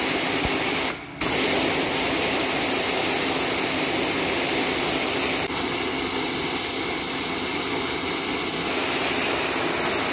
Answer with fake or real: real